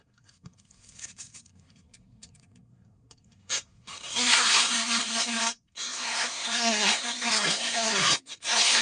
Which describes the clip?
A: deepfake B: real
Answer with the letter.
A